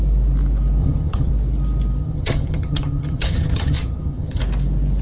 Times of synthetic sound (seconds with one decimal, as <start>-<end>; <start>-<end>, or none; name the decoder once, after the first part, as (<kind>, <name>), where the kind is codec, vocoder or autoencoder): 0.8-1.3 (vocoder, HiFi-GAN); 2.0-4.4

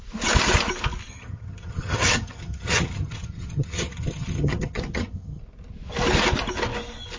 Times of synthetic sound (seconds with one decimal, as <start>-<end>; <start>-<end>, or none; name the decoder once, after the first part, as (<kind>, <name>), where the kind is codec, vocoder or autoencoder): 1.1-5.4 (vocoder, HiFi-GAN)

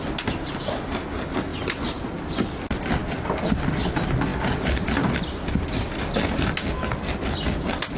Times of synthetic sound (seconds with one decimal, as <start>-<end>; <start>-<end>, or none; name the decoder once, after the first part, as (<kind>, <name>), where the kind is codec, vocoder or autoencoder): none

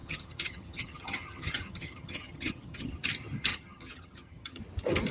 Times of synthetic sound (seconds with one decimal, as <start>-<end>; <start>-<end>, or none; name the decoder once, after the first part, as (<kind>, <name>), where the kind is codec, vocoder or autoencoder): 0.0-2.9 (vocoder, HiFi-GAN); 3.5-4.6

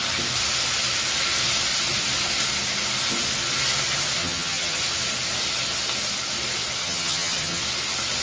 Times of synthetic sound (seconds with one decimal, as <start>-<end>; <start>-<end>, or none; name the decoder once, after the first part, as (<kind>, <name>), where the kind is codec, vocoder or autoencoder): 4.2-4.8 (vocoder, HiFi-GAN); 6.8-7.6

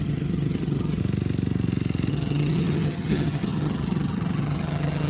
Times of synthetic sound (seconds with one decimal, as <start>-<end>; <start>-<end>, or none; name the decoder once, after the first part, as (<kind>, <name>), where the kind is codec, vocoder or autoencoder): 0.0-1.0 (vocoder, HiFi-GAN); 2.1-5.1